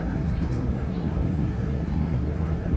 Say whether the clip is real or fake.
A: fake